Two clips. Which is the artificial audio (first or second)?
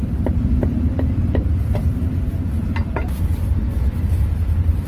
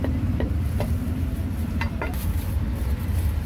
first